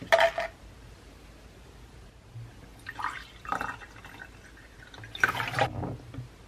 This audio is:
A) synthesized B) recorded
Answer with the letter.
B